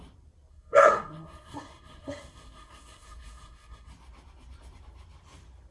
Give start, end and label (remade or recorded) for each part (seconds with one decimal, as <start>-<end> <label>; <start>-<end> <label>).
0.0-0.5 recorded; 0.5-3.9 remade; 3.9-5.7 recorded